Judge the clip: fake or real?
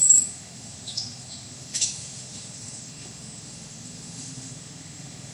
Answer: fake